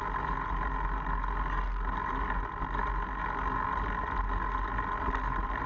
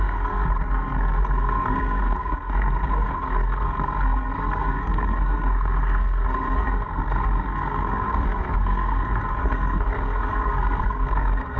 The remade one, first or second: second